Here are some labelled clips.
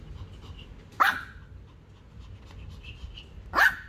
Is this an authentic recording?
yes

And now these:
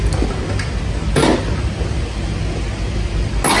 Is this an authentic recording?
yes